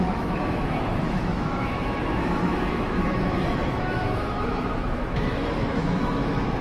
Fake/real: fake